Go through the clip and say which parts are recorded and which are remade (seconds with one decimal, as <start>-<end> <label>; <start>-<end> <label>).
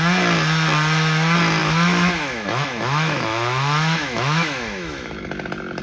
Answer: 0.0-1.6 recorded; 1.6-5.1 remade; 5.1-5.8 recorded